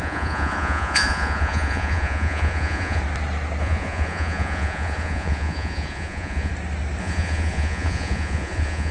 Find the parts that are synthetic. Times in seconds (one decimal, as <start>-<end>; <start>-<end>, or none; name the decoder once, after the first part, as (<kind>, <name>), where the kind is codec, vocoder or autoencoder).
0.0-3.0 (vocoder, Vocos); 3.6-6.5; 7.0-8.9